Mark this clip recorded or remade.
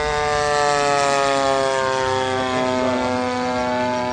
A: recorded